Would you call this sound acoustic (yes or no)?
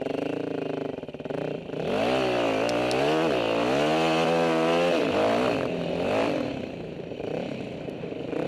yes